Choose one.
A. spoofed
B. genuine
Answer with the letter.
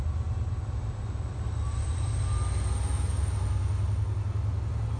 B